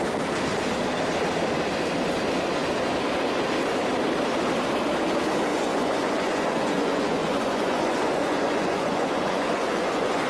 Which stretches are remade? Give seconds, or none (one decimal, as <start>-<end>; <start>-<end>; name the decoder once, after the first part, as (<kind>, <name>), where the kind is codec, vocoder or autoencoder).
5.5-10.3 (vocoder, Vocos)